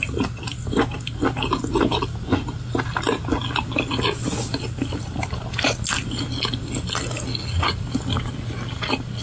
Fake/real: real